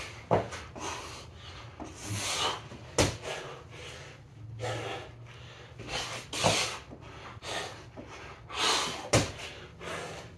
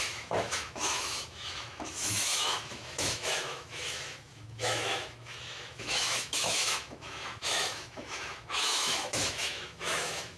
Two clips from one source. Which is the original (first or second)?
first